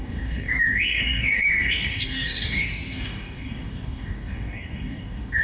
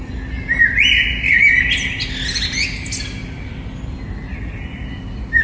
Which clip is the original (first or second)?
second